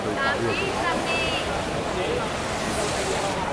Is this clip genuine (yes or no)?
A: yes